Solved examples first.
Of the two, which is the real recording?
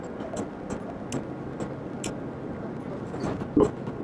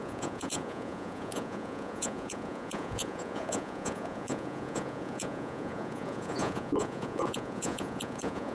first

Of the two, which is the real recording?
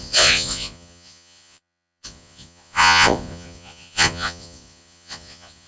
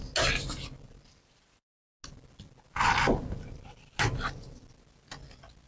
second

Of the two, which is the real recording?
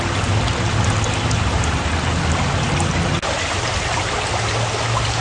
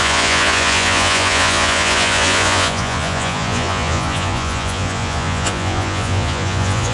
first